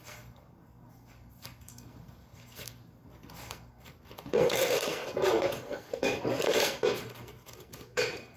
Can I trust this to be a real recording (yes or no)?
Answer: no